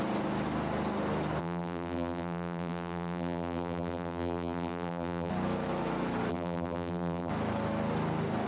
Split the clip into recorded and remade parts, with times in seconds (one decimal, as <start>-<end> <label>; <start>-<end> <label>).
0.0-1.4 recorded; 1.4-5.3 remade; 5.3-6.3 recorded; 6.3-7.3 remade; 7.3-8.5 recorded